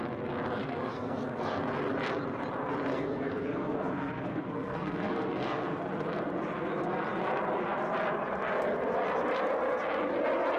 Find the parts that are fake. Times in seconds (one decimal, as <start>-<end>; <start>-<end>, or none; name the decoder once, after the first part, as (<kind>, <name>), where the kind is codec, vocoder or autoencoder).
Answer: 0.6-1.6 (codec, SNAC); 2.9-5.8

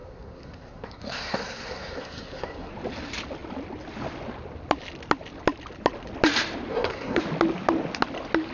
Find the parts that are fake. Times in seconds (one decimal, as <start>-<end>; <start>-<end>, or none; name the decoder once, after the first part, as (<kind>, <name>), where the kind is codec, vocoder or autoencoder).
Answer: 0.0-2.7 (codec, SNAC); 6.7-7.2

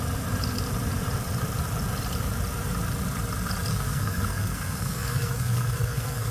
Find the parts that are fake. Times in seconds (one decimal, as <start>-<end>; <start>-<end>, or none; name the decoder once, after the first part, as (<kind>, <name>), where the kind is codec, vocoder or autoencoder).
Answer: 3.7-6.3 (codec, SNAC)

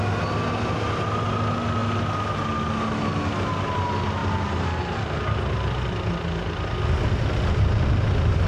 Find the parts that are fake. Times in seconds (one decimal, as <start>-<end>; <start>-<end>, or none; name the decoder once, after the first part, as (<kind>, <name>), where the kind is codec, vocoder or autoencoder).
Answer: none

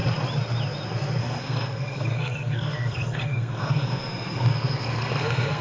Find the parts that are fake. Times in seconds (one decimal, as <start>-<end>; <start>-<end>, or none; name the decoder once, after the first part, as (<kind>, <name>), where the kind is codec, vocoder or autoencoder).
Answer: 1.2-5.6 (codec, SNAC)

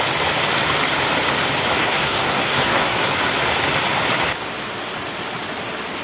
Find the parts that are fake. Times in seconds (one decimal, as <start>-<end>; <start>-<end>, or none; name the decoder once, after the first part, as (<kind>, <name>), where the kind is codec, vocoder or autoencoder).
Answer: 1.8-3.1 (codec, SNAC)

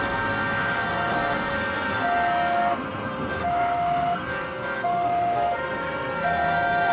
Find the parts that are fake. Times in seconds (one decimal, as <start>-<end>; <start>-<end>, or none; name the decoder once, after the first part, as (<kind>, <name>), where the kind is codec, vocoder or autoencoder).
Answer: 0.0-6.9 (codec, SNAC)